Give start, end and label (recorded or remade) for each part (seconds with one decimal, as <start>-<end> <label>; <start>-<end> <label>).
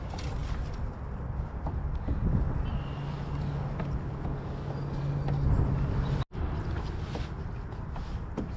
0.0-8.6 recorded